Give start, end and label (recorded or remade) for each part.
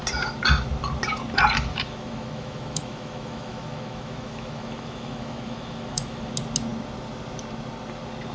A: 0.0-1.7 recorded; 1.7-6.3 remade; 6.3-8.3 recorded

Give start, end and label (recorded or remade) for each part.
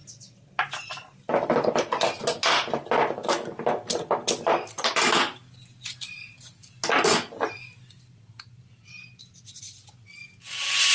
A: 0.0-10.9 recorded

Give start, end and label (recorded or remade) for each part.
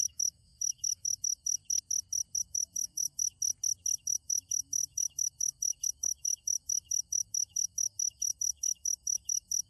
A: 0.0-1.6 remade; 1.6-2.4 recorded; 2.4-3.3 remade; 3.3-4.0 recorded; 4.0-9.7 remade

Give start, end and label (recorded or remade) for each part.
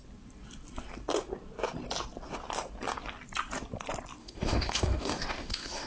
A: 0.0-4.2 recorded; 4.2-5.9 remade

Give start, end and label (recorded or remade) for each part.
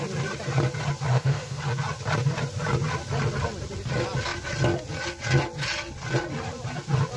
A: 0.0-1.1 recorded; 1.1-1.6 remade; 1.6-7.2 recorded